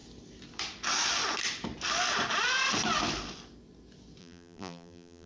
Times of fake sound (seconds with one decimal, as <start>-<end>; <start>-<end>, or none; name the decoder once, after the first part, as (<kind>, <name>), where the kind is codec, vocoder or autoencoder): 4.2-5.3 (vocoder, BigVGAN v2)